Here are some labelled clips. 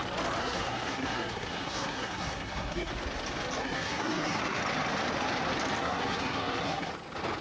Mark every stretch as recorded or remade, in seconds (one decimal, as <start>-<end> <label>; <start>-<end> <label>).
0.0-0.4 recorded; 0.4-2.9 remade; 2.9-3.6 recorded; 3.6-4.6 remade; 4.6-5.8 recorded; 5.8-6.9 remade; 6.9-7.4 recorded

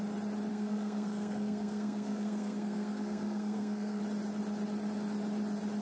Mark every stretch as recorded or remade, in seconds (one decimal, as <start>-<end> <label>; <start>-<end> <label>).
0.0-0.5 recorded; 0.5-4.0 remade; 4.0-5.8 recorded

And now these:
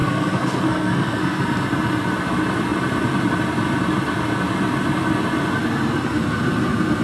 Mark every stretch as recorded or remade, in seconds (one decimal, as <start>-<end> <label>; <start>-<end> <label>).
0.0-1.4 remade; 1.4-7.0 recorded

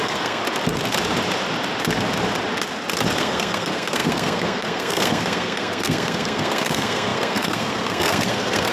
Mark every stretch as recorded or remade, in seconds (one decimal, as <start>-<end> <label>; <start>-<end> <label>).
0.0-0.4 remade; 0.4-3.2 recorded; 3.2-8.7 remade

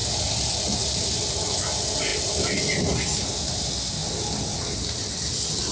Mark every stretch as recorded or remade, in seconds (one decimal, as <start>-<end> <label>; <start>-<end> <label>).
0.0-5.7 recorded

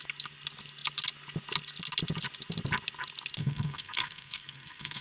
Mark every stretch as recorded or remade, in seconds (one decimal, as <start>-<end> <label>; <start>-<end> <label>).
0.0-3.4 recorded; 3.4-5.0 remade